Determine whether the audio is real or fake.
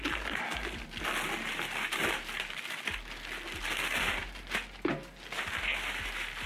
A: real